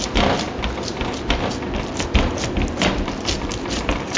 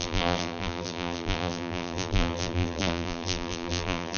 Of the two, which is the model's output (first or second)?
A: second